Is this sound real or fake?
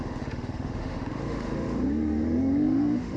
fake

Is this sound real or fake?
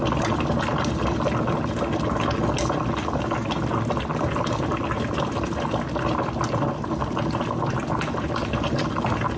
real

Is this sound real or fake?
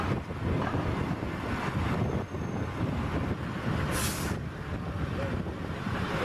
real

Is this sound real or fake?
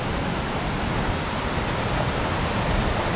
real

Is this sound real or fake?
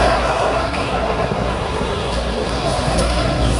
fake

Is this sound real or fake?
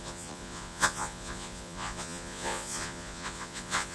fake